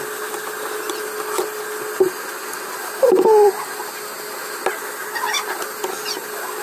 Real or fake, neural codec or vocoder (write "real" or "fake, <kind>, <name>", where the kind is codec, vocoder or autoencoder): real